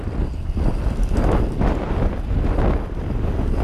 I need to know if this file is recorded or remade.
recorded